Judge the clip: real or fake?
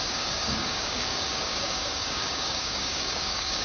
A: fake